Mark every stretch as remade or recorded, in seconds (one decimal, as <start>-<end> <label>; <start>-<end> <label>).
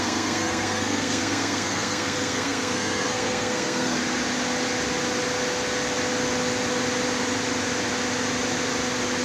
0.0-4.0 remade; 4.0-9.2 recorded